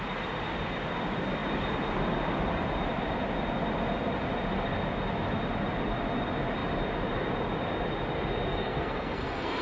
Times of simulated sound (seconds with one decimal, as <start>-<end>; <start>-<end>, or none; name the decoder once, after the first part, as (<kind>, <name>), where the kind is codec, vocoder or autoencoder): 8.5-9.6 (codec, SNAC)